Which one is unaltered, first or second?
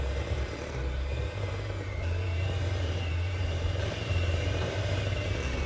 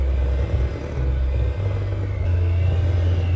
second